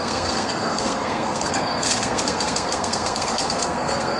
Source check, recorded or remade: remade